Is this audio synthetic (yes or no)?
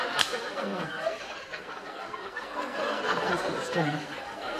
yes